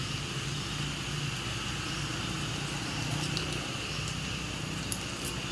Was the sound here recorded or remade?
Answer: recorded